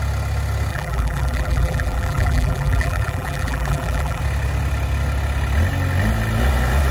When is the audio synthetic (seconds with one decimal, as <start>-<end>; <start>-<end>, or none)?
0.7-4.2